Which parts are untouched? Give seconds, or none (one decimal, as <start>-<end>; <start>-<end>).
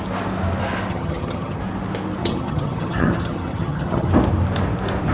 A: 0.0-0.9; 1.6-2.2; 4.1-5.1